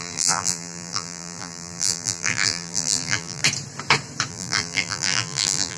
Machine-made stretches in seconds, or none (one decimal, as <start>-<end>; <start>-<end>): 0.0-3.4; 4.3-5.8